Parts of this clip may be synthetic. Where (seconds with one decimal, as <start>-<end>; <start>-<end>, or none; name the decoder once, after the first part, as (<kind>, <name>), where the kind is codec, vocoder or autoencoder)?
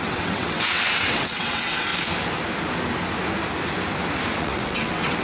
0.0-1.9 (vocoder, WaveNeXt); 4.4-5.2